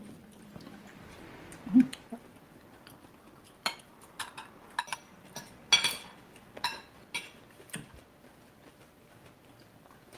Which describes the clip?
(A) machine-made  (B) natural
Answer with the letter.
B